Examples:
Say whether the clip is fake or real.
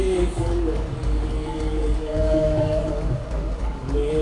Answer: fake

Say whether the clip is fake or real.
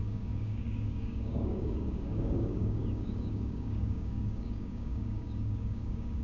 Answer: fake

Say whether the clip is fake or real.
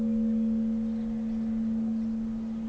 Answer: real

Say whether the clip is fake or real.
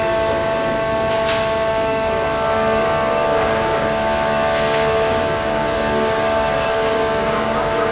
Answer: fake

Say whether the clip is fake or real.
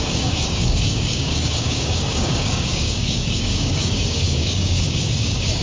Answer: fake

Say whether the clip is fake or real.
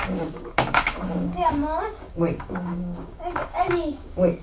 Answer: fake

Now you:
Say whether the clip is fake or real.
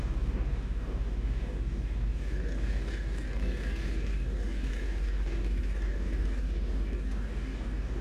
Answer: fake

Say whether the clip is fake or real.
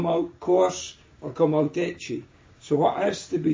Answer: fake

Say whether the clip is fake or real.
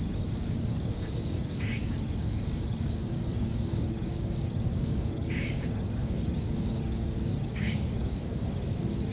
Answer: fake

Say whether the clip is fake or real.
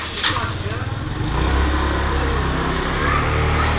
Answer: real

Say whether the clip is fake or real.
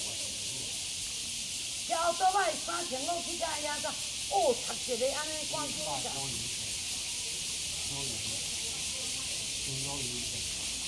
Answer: real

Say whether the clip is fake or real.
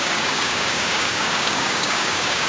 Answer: fake